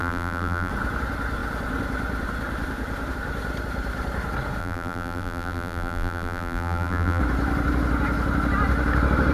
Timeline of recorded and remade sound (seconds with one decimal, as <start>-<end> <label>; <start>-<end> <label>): 0.0-0.7 remade; 0.7-4.6 recorded; 4.6-7.2 remade; 7.2-9.3 recorded

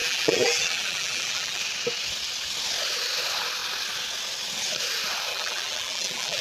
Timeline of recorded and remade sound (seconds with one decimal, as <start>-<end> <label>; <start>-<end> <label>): 0.0-1.6 remade; 1.6-5.3 recorded; 5.3-6.4 remade

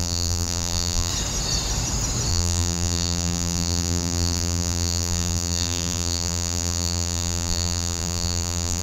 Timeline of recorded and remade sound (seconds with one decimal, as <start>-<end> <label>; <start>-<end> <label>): 0.0-1.1 remade; 1.1-2.3 recorded; 2.3-8.8 remade

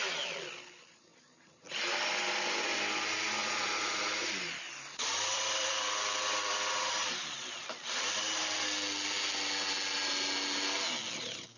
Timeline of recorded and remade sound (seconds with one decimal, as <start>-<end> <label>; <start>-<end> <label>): 0.0-3.4 recorded; 3.4-8.1 remade; 8.1-11.6 recorded

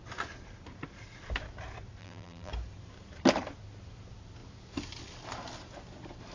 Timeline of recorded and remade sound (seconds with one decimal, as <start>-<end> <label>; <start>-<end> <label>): 0.0-2.0 recorded; 2.0-2.5 remade; 2.5-6.3 recorded

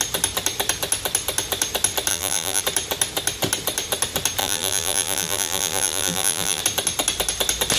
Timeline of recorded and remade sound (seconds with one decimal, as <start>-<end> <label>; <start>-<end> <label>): 0.0-2.1 recorded; 2.1-2.6 remade; 2.6-4.4 recorded; 4.4-6.6 remade; 6.6-7.8 recorded

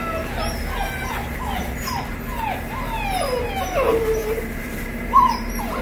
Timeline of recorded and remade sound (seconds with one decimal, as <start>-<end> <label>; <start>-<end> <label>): 0.0-4.2 recorded; 4.2-5.8 remade